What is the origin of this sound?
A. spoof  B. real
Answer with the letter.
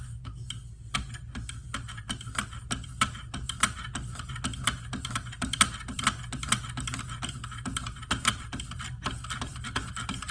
B